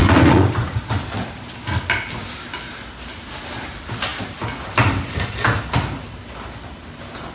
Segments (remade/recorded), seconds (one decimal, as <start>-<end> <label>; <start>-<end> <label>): 0.0-0.8 remade; 0.8-7.3 recorded